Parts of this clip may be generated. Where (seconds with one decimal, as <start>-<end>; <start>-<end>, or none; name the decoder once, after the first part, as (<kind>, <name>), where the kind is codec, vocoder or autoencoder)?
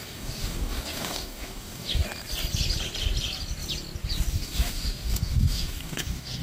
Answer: 0.0-2.0 (codec, DAC); 4.3-6.4